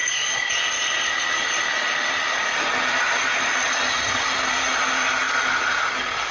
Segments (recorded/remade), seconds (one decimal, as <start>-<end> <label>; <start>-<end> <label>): 0.0-0.5 remade; 0.5-6.3 recorded

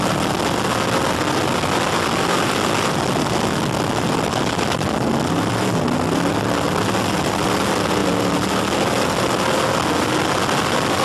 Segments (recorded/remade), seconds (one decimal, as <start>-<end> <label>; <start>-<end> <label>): 0.0-11.0 recorded

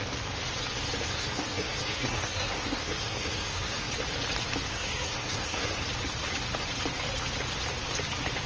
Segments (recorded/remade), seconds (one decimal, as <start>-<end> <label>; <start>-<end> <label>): 0.0-1.1 recorded; 1.1-3.9 remade; 3.9-4.7 recorded; 4.7-5.8 remade; 5.8-8.5 recorded

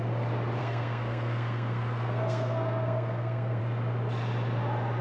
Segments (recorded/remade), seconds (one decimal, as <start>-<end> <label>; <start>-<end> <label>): 0.0-0.6 recorded; 0.6-3.6 remade; 3.6-5.0 recorded

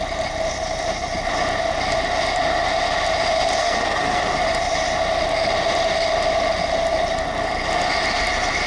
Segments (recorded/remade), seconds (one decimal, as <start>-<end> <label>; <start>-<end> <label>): 0.0-3.6 recorded; 3.6-4.2 remade; 4.2-8.7 recorded

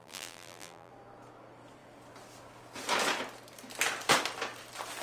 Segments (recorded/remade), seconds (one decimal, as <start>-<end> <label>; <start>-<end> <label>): 0.0-0.9 remade; 0.9-5.0 recorded